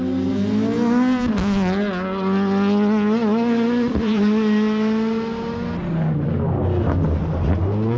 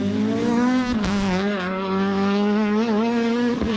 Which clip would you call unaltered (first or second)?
first